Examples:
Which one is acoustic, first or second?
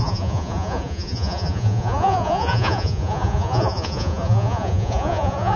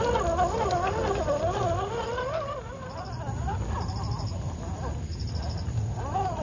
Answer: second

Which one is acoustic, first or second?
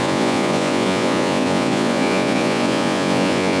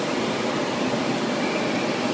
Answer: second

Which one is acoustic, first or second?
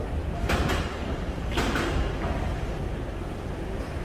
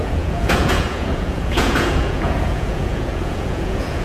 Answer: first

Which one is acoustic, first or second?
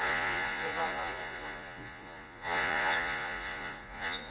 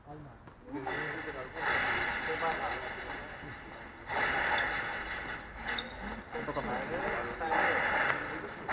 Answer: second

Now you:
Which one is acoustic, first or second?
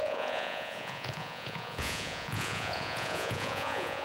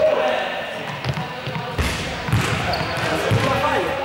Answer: second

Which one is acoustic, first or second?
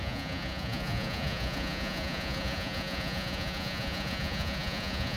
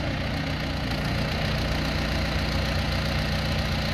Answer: second